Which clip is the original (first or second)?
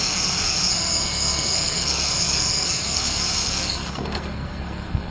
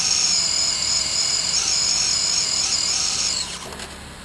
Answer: second